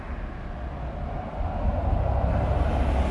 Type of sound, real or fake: real